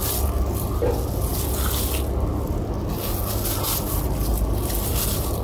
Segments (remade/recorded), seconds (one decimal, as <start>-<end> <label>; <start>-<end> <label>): 0.0-5.4 recorded